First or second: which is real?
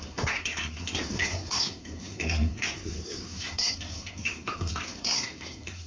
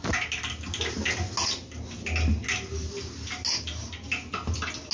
second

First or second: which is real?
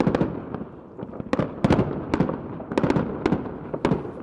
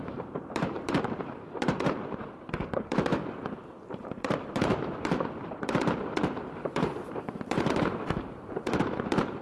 first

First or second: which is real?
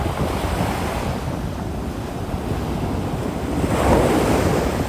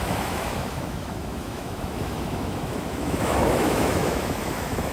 first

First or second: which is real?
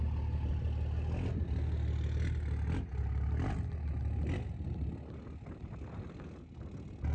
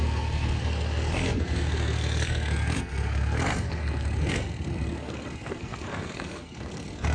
first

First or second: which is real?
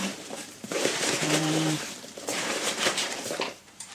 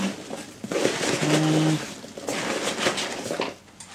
second